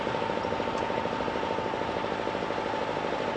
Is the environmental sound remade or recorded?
recorded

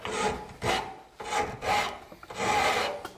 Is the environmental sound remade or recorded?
recorded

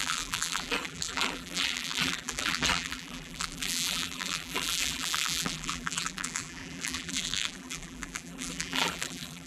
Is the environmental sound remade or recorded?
remade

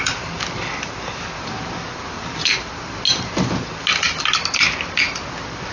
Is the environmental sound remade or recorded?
recorded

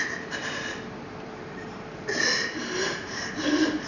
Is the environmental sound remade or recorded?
remade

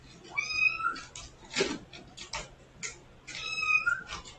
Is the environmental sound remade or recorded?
recorded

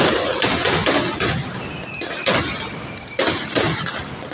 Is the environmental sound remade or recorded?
recorded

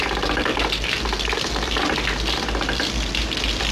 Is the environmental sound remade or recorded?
recorded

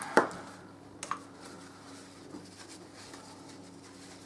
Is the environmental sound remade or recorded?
recorded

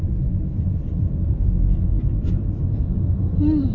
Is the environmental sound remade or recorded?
remade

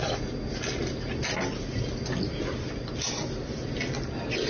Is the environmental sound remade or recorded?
recorded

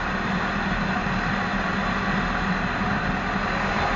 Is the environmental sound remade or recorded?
recorded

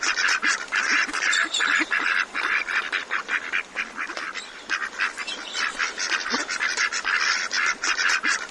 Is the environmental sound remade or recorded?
remade